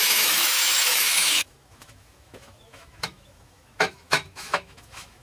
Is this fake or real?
fake